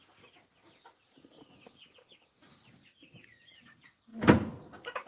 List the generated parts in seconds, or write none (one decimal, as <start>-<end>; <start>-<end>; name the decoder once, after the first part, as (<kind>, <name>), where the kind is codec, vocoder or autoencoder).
none